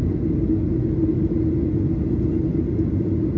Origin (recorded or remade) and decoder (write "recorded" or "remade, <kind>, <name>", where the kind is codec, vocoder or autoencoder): recorded